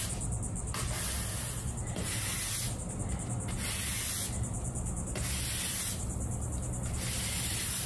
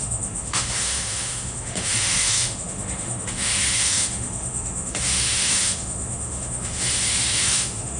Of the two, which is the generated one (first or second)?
second